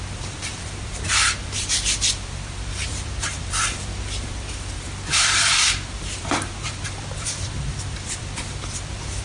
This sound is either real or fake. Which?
fake